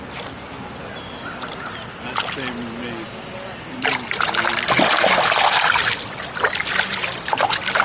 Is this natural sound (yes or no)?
yes